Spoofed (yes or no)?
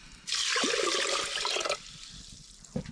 no